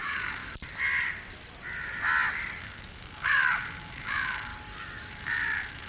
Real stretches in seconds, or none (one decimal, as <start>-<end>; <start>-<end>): 0.4-2.6; 4.5-5.1